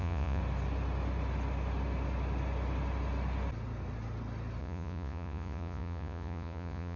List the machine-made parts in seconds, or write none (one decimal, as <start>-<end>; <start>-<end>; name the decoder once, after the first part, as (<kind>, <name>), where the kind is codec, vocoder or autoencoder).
0.0-0.4 (vocoder, Vocos); 4.6-7.0